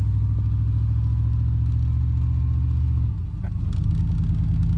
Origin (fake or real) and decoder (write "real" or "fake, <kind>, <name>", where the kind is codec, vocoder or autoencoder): real